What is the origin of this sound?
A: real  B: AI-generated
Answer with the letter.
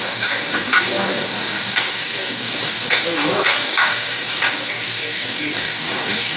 B